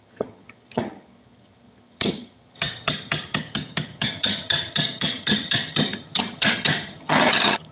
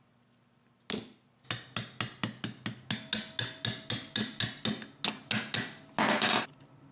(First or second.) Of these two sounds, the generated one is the first